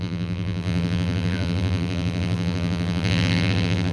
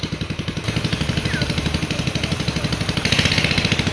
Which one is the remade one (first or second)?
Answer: first